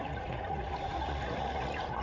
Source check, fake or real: fake